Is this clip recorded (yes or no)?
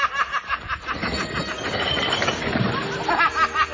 yes